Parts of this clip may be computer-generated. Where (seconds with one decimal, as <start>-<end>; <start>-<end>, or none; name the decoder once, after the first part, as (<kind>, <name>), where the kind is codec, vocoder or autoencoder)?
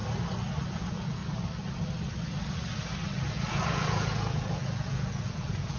0.7-1.2 (vocoder, Vocos); 3.5-5.8